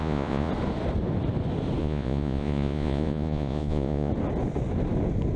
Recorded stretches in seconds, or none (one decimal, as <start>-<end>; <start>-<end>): 0.5-1.8; 4.1-5.4